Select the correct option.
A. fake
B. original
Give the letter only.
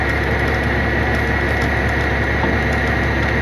B